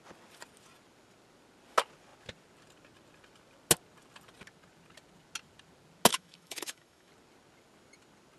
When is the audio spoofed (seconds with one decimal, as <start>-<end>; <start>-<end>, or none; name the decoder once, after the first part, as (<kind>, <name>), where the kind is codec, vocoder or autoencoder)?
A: 6.1-7.1 (autoencoder, DAC-VAE)